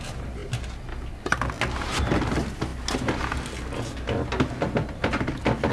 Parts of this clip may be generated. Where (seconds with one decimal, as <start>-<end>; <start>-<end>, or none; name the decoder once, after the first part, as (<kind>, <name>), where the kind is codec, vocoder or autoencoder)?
none